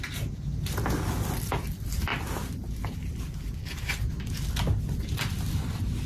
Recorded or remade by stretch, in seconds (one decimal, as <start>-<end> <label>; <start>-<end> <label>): 0.0-6.1 recorded